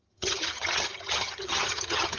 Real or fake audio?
fake